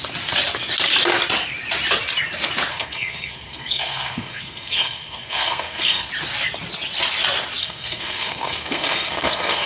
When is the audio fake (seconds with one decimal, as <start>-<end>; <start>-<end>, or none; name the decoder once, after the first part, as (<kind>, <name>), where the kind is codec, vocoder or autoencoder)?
2.7-6.1 (codec, SNAC); 7.6-9.7